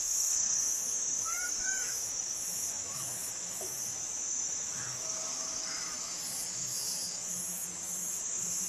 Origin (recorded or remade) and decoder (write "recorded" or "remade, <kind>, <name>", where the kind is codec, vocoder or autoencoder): remade, autoencoder, DAC-VAE